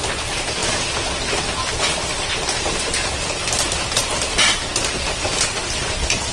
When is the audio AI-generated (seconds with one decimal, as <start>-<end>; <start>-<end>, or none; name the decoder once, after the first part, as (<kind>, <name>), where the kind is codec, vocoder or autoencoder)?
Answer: none